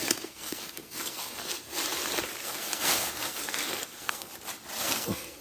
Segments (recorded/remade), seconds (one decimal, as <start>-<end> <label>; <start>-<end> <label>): 0.0-1.8 remade; 1.8-2.4 recorded; 2.4-4.3 remade; 4.3-4.8 recorded; 4.8-5.4 remade